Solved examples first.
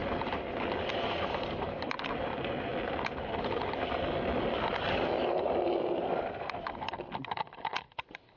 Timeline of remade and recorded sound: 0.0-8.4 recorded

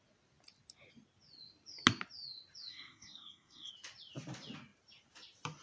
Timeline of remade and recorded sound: 0.0-2.7 recorded; 2.7-3.7 remade; 3.7-5.6 recorded